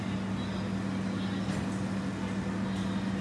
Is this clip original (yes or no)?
yes